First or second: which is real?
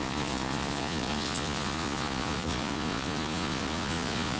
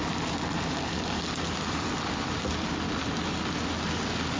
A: second